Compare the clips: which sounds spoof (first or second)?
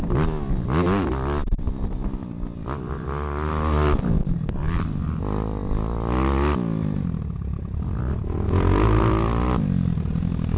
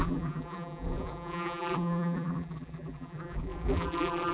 second